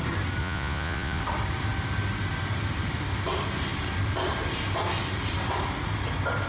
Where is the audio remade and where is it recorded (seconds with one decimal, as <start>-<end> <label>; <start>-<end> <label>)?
0.0-0.4 recorded; 0.4-1.2 remade; 1.2-6.5 recorded